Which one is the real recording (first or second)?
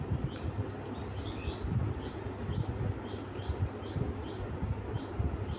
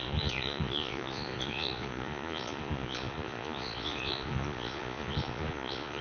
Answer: first